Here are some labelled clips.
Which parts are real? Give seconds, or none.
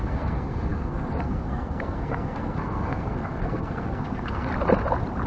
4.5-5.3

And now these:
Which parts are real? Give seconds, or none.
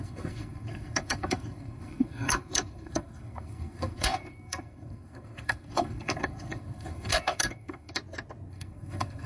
8.0-8.5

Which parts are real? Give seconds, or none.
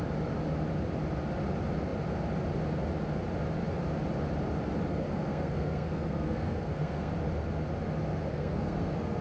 0.0-4.9; 7.1-8.3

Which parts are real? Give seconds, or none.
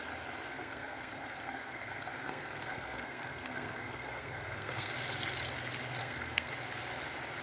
0.0-0.5; 4.9-6.0; 6.5-7.4